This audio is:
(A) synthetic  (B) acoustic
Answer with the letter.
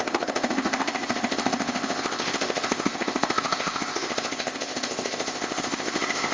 A